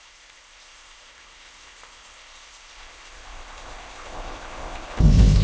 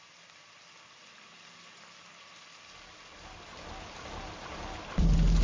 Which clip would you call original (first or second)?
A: second